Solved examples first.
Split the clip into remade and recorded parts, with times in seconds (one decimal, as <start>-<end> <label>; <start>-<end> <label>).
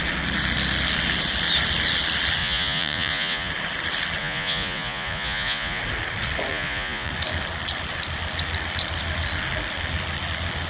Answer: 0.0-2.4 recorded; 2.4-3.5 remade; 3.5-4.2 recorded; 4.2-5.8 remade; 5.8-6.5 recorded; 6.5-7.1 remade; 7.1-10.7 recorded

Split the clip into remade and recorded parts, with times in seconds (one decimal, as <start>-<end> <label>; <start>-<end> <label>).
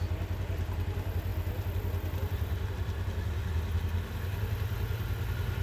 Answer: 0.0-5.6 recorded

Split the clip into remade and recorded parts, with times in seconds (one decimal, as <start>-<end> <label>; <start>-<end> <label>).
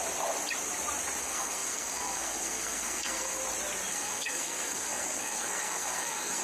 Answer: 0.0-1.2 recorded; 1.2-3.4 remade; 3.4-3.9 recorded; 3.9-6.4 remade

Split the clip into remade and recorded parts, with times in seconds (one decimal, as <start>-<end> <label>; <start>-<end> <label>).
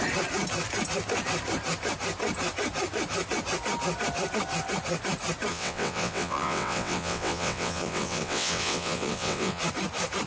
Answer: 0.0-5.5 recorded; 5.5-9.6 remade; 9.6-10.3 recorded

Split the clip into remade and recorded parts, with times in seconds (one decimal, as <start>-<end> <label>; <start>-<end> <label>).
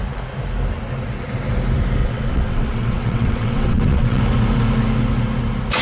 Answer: 0.0-2.0 recorded; 2.0-4.2 remade; 4.2-5.8 recorded